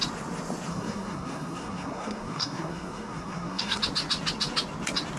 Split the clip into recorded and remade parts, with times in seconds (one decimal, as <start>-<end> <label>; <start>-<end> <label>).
0.0-0.7 recorded; 0.7-3.8 remade; 3.8-5.2 recorded